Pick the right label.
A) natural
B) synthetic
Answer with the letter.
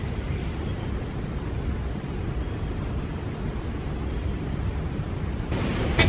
A